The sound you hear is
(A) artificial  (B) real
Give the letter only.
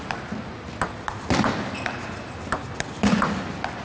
B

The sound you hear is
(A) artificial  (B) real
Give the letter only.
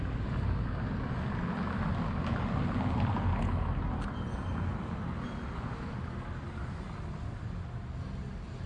B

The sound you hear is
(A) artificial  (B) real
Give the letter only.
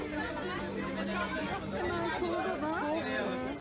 B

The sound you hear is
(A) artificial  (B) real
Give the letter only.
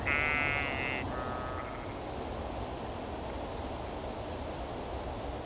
B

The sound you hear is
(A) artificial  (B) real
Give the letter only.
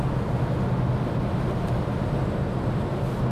B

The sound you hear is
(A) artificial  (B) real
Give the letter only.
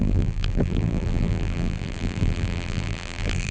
A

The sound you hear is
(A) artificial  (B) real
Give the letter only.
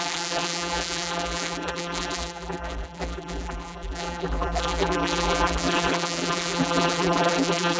A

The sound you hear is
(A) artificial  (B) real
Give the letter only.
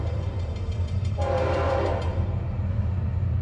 A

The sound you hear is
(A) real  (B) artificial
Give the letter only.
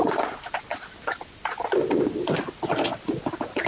A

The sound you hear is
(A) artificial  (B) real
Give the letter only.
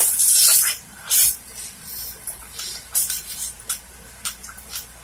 A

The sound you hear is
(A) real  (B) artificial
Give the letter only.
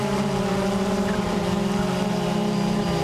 B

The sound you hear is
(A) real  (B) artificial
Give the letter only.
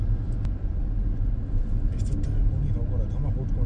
A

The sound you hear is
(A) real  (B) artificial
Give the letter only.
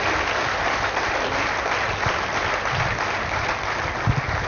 A